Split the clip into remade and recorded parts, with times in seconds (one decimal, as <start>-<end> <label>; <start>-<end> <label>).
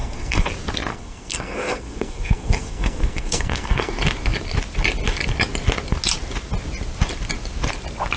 0.0-0.5 remade; 0.5-0.9 recorded; 0.9-3.9 remade; 3.9-8.2 recorded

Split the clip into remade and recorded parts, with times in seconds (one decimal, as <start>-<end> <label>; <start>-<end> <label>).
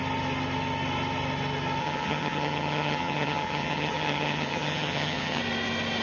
0.0-1.8 recorded; 1.8-5.4 remade; 5.4-6.0 recorded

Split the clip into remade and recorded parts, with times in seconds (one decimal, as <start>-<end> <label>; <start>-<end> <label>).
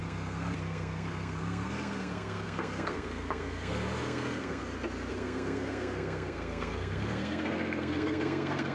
0.0-4.6 remade; 4.6-5.1 recorded; 5.1-8.7 remade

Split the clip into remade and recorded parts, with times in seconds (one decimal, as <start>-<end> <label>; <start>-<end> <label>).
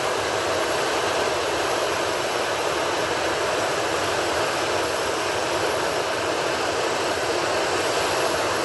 0.0-8.6 recorded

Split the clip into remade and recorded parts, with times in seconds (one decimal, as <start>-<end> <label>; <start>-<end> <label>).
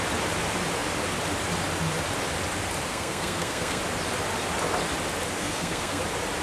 0.0-2.9 recorded; 2.9-3.8 remade; 3.8-5.4 recorded; 5.4-6.0 remade; 6.0-6.4 recorded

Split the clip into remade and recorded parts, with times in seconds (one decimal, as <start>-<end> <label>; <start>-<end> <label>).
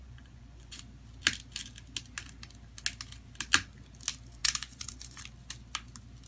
0.0-0.8 remade; 0.8-4.4 recorded; 4.4-5.2 remade; 5.2-6.3 recorded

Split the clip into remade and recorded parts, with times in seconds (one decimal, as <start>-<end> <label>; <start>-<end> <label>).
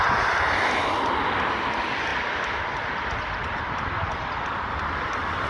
0.0-5.5 recorded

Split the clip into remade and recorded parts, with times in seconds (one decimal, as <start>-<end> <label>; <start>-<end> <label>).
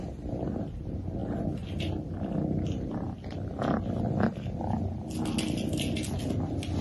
0.0-6.8 recorded